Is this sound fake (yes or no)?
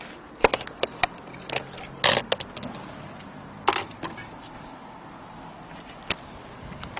no